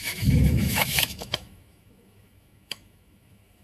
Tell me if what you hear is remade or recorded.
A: remade